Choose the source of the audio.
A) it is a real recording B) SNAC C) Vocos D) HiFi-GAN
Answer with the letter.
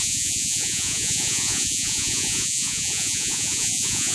C